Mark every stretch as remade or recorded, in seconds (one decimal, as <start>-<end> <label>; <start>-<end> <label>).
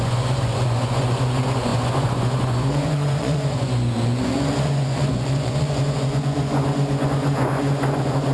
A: 0.0-8.3 remade